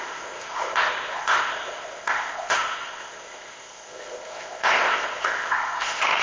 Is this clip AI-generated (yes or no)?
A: yes